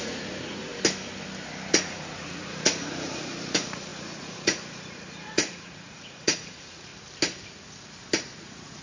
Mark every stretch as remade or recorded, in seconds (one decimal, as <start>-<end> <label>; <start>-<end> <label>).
0.0-0.7 remade; 0.7-1.7 recorded; 1.7-6.9 remade; 6.9-8.4 recorded; 8.4-8.8 remade